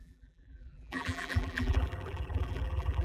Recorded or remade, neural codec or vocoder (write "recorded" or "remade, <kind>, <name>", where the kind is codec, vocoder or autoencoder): remade, vocoder, BigVGAN v2